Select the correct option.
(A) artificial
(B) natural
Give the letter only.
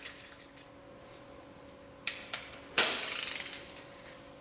B